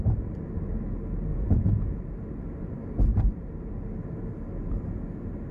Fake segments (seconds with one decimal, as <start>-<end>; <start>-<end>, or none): 1.3-2.0